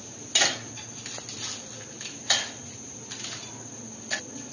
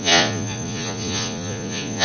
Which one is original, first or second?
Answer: first